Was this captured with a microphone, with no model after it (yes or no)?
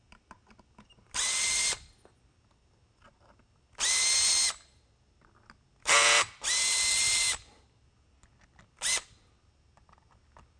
yes